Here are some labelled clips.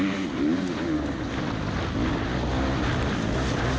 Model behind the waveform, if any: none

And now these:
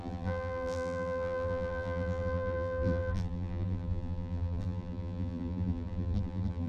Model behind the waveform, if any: vocoder, BigVGAN v2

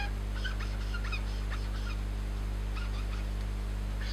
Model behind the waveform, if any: none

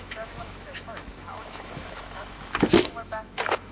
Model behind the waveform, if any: autoencoder, DAC-VAE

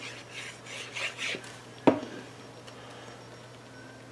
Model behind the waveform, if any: none